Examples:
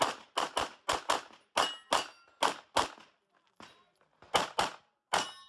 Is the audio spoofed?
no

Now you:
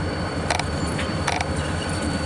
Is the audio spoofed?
yes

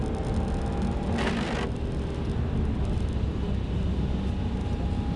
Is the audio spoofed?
no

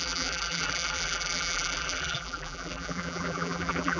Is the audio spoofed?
yes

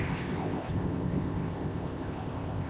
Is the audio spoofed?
yes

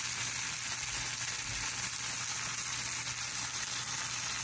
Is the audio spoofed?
no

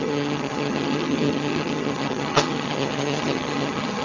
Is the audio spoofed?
yes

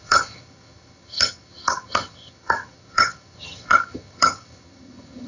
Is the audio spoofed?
yes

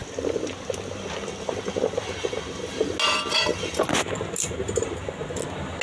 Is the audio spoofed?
no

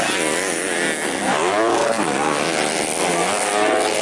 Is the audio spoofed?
no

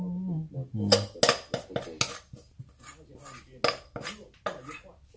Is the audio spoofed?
no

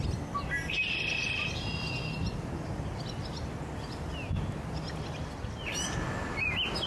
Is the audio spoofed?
no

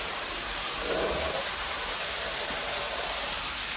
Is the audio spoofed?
yes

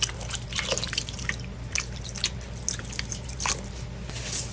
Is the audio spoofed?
no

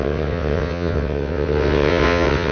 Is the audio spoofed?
yes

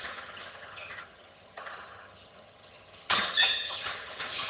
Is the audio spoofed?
yes